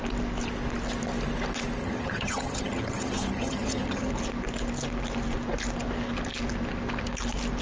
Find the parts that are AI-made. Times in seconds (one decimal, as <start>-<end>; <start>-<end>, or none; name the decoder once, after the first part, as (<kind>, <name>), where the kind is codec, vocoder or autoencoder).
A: 1.8-4.1 (vocoder, HiFi-GAN)